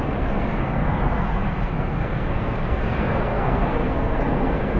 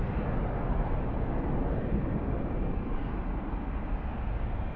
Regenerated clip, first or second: first